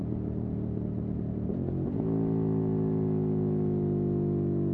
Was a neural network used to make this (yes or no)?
no